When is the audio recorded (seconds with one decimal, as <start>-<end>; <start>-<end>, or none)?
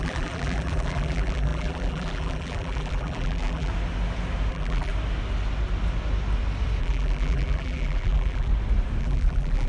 3.7-4.5; 4.9-6.8; 8.5-9.0